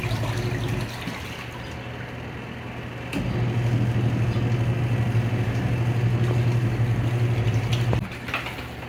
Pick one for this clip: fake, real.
real